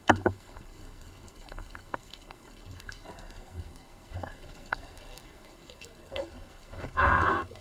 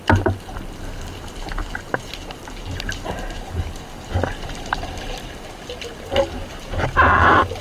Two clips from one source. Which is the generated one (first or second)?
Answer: first